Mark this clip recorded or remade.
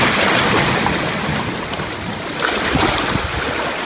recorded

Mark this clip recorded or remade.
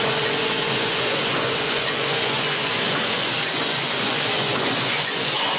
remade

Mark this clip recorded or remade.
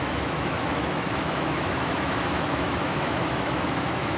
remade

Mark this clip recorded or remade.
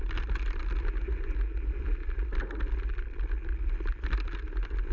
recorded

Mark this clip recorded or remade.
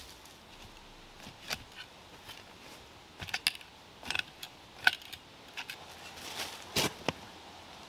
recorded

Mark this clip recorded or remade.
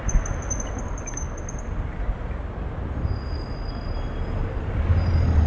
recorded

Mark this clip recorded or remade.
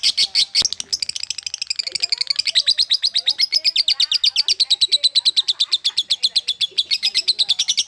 recorded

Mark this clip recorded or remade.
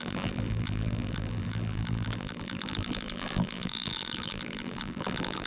remade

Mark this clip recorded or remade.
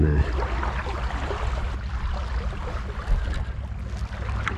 recorded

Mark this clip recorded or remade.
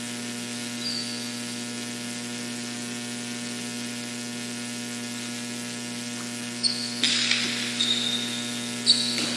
recorded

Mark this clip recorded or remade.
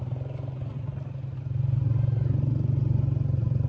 recorded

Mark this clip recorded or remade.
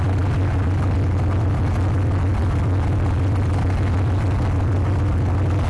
recorded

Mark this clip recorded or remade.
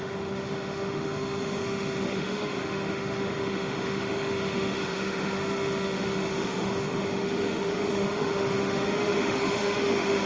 remade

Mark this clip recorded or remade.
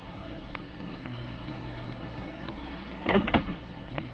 remade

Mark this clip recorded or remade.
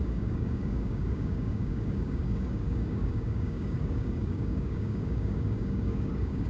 remade